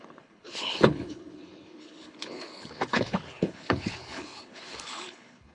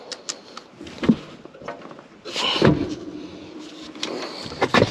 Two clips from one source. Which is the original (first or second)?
second